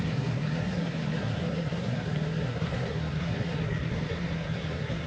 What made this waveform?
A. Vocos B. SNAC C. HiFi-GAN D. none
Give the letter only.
B